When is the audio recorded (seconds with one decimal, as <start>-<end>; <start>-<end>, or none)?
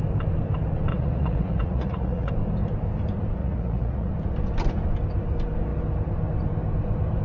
0.0-0.9; 2.3-3.4; 4.1-7.2